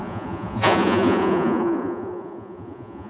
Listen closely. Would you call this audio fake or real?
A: fake